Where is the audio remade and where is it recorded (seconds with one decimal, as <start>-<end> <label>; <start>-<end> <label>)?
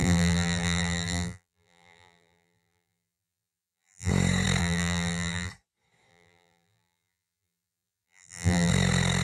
0.0-4.1 remade; 4.1-4.6 recorded; 4.6-5.5 remade; 5.5-6.1 recorded; 6.1-8.7 remade; 8.7-9.2 recorded